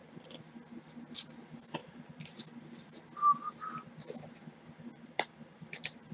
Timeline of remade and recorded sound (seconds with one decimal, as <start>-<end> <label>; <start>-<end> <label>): 0.0-1.8 recorded; 1.8-2.4 remade; 2.4-4.9 recorded; 4.9-6.1 remade